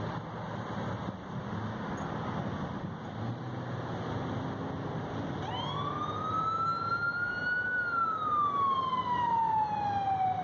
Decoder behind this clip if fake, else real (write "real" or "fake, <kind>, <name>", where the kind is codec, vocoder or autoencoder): real